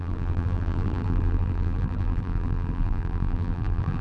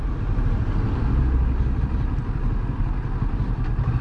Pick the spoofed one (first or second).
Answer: first